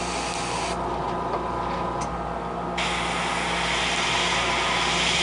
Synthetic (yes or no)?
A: no